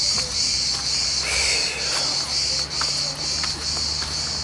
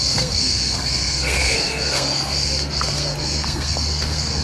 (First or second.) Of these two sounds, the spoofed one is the second